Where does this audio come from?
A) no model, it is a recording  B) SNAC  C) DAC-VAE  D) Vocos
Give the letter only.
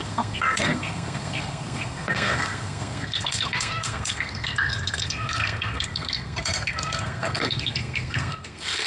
B